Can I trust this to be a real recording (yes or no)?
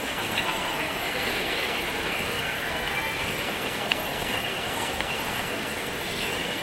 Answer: no